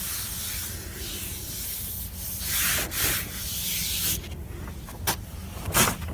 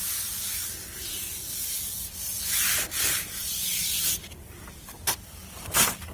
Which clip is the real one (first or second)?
first